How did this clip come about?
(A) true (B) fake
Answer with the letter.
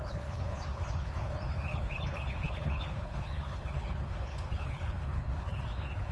B